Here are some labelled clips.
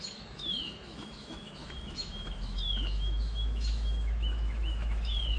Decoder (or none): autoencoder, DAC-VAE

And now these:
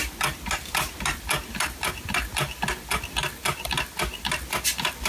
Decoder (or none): none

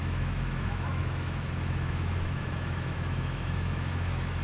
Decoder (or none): autoencoder, DAC-VAE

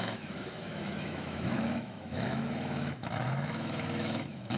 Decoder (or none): autoencoder, DAC-VAE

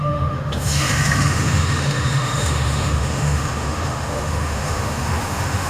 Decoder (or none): autoencoder, DAC-VAE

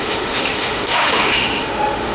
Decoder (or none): autoencoder, DAC-VAE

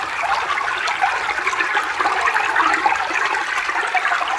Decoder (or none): none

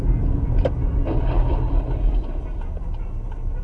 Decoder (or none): none